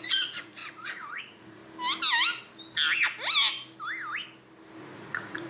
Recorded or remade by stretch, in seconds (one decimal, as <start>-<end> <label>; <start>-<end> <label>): 0.0-1.6 remade; 1.6-4.8 recorded; 4.8-5.5 remade